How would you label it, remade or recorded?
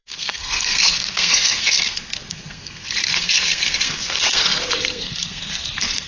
remade